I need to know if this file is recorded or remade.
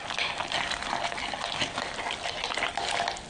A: recorded